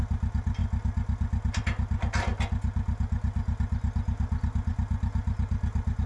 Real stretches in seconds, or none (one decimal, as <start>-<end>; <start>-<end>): 0.0-6.1